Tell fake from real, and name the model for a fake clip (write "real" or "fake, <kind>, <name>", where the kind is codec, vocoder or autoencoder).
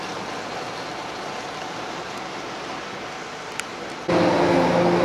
real